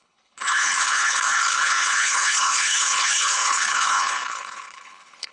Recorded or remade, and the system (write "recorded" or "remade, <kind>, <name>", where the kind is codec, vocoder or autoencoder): remade, codec, HILCodec